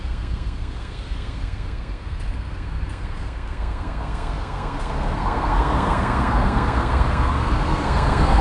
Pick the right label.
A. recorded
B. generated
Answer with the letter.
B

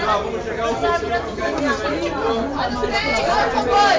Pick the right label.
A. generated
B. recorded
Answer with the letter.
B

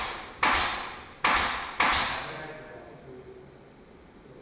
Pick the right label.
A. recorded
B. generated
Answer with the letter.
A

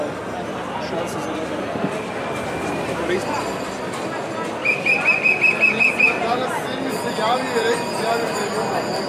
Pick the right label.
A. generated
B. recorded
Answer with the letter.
B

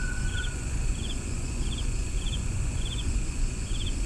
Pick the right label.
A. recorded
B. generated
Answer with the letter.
B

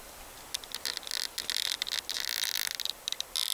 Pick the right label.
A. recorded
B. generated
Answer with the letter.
A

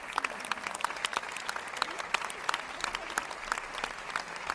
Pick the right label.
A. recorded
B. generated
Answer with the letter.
A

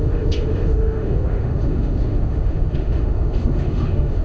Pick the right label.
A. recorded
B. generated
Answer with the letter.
B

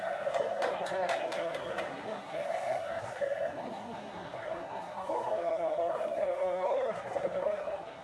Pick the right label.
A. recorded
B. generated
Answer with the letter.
B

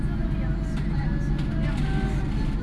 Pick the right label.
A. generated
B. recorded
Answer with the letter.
B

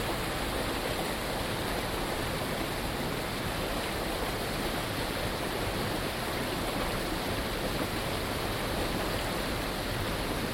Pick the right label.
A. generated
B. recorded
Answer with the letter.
B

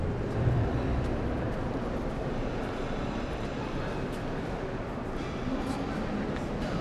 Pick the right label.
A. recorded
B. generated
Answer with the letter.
A